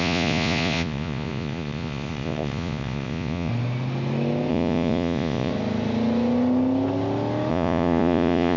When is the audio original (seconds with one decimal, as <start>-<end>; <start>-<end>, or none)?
3.5-4.5; 5.5-7.5